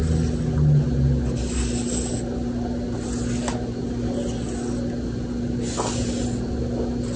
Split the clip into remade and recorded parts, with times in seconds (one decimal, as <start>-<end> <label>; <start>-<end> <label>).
0.0-7.2 recorded